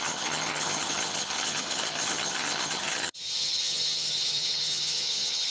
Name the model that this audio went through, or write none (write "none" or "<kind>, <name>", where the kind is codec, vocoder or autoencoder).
vocoder, HiFi-GAN